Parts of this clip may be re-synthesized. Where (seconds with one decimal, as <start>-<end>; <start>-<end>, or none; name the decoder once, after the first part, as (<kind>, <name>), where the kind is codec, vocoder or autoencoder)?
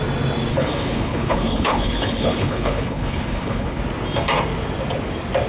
0.5-3.8 (codec, HILCodec)